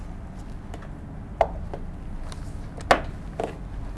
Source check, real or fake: real